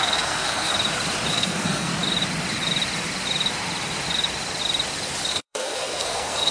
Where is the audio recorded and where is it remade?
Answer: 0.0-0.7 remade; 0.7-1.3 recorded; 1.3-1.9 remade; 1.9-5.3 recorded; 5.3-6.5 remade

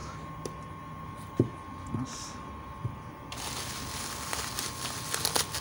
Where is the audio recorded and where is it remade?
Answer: 0.0-5.6 recorded

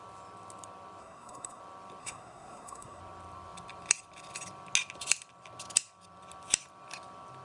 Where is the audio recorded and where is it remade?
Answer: 0.0-1.0 recorded; 1.0-1.6 remade; 1.6-2.0 recorded; 2.0-3.0 remade; 3.0-7.4 recorded

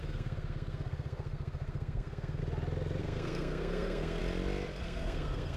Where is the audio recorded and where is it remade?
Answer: 0.0-2.4 remade; 2.4-3.0 recorded; 3.0-4.2 remade; 4.2-4.8 recorded; 4.8-5.6 remade

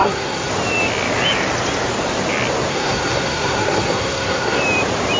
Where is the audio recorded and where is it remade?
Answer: 0.0-0.5 remade; 0.5-2.7 recorded; 2.7-4.6 remade; 4.6-5.2 recorded